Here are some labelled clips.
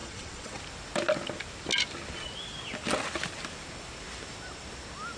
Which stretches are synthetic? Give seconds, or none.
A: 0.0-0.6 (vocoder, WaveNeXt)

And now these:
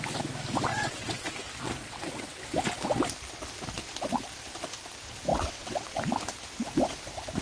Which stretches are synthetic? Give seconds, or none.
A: 0.7-1.3 (vocoder, WaveNeXt); 1.8-2.4; 5.3-6.0

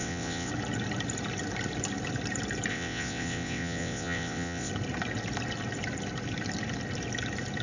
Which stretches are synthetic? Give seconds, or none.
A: 0.0-0.5 (vocoder, WaveNeXt); 2.7-4.7

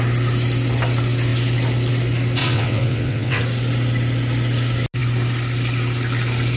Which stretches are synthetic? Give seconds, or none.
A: 2.4-3.4 (vocoder, WaveNeXt)

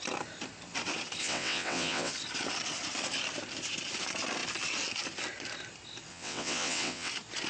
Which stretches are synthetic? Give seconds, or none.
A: 1.2-2.1 (vocoder, WaveNeXt); 6.1-7.1